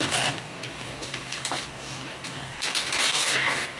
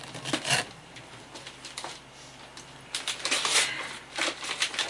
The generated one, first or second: first